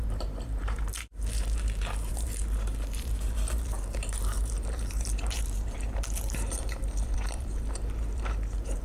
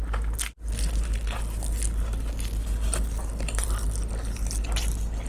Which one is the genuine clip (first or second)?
second